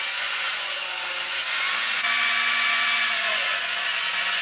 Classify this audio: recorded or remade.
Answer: remade